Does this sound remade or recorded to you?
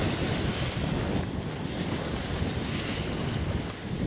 recorded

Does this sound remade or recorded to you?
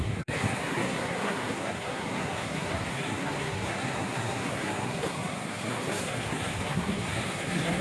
remade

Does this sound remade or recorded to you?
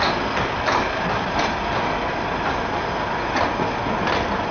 recorded